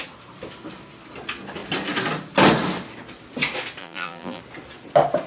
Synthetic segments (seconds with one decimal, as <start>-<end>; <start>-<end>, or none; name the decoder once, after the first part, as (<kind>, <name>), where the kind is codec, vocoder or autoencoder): 3.8-4.4 (vocoder, BigVGAN v2)